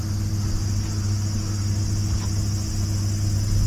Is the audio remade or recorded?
recorded